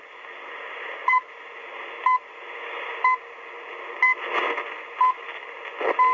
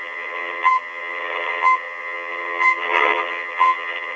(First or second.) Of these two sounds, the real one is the first